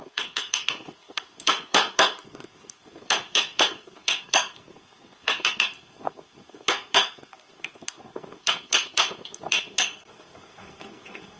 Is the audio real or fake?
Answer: fake